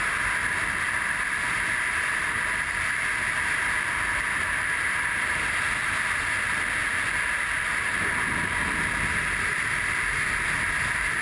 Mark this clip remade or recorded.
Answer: recorded